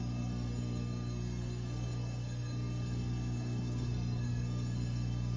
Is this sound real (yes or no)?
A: no